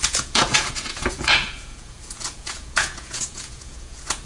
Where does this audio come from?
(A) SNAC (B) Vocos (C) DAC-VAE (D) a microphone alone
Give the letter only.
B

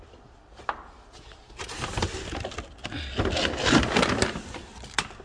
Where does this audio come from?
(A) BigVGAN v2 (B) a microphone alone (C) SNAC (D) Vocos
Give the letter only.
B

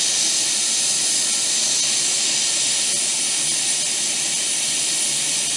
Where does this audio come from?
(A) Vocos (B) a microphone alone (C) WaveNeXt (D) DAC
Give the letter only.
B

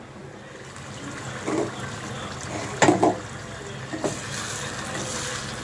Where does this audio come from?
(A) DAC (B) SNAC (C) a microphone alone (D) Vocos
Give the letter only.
C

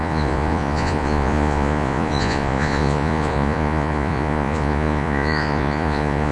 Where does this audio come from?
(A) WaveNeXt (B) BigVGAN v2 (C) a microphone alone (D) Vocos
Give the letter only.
D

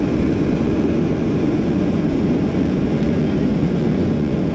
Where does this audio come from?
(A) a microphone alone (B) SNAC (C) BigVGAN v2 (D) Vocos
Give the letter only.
D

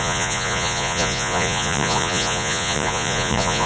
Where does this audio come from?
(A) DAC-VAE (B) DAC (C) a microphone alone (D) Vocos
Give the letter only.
D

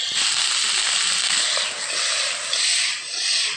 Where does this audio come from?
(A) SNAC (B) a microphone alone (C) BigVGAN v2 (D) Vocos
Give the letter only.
B